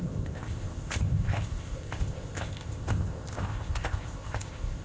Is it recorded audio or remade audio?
remade